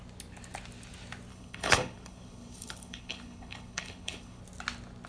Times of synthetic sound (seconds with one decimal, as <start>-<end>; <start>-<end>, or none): 1.3-4.4